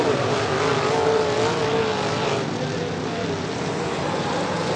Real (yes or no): yes